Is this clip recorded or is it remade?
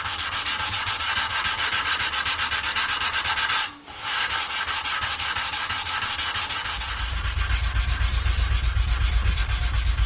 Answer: recorded